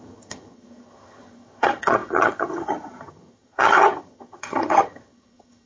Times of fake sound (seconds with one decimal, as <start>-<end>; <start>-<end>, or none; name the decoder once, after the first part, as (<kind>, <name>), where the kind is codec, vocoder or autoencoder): 0.0-5.7 (vocoder, HiFi-GAN)